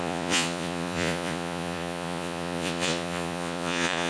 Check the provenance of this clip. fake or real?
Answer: fake